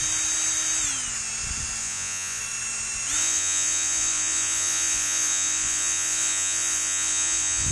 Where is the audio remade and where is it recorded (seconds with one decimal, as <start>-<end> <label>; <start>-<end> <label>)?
0.0-1.8 recorded; 1.8-2.4 remade; 2.4-3.2 recorded; 3.2-7.7 remade

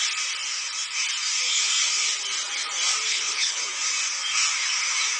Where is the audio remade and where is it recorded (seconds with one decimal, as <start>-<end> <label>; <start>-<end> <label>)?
0.0-3.1 recorded; 3.1-3.6 remade; 3.6-5.2 recorded

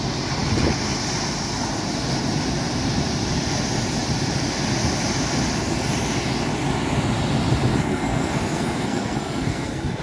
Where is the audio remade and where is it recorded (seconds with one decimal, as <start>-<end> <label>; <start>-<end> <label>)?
0.0-7.7 recorded; 7.7-10.0 remade

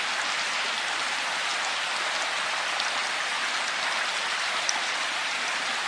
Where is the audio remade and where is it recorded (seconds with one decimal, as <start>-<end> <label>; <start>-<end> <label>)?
0.0-5.9 recorded

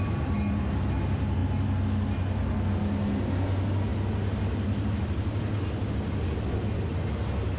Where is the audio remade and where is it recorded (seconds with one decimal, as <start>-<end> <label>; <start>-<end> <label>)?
0.0-7.6 recorded